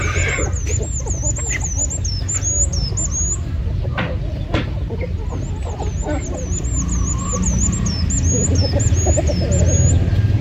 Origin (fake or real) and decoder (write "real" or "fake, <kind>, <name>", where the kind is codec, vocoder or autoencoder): real